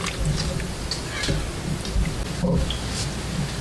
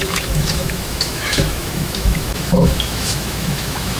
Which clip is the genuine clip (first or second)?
first